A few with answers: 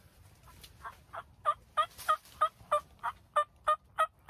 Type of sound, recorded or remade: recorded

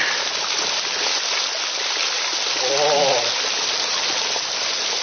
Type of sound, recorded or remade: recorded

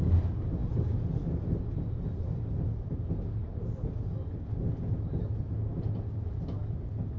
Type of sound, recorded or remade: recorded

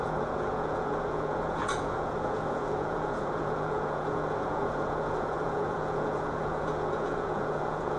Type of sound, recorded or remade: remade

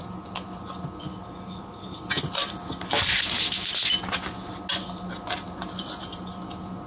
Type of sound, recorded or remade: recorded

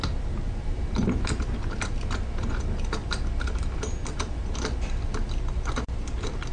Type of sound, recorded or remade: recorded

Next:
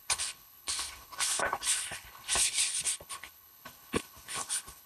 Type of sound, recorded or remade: remade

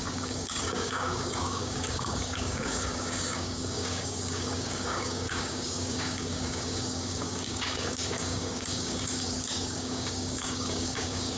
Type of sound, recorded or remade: remade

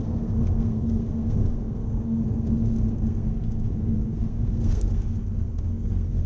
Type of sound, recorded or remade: remade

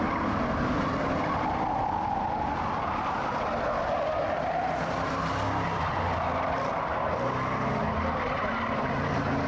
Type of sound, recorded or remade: recorded